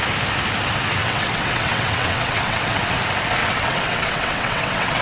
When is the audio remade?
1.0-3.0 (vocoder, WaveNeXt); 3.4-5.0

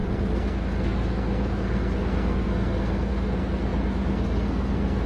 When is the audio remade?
0.0-5.1 (codec, SNAC)

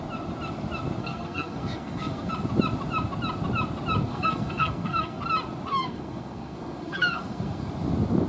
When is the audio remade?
1.0-2.3 (codec, SNAC); 4.1-5.2; 5.7-7.7

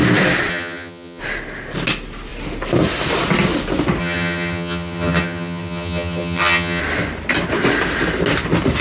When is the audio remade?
0.5-1.2 (vocoder, HiFi-GAN); 4.0-6.8

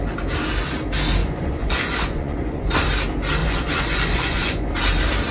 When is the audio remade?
1.2-2.7 (vocoder, Vocos); 3.4-4.7

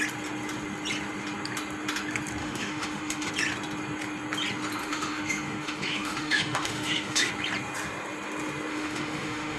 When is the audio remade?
2.4-3.3 (autoencoder, DAC-VAE); 4.8-7.3; 8.7-9.6